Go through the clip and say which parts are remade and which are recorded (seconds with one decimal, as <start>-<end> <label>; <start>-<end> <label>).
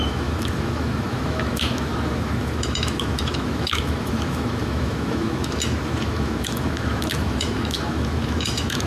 0.0-8.9 remade